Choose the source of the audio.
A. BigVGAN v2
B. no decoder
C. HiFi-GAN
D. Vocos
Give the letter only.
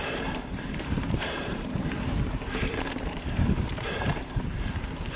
A